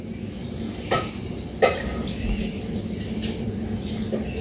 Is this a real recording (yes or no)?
yes